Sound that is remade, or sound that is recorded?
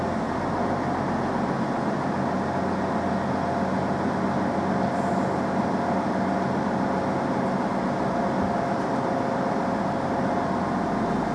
recorded